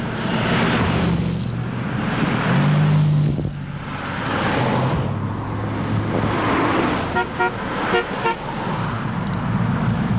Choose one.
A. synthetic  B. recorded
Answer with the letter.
B